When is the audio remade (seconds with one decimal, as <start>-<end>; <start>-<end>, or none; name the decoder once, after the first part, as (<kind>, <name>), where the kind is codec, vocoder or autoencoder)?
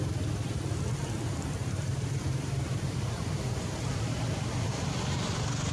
1.6-4.5 (vocoder, BigVGAN v2)